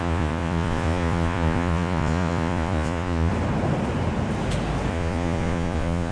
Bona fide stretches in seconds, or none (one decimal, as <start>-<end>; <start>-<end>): 3.3-4.9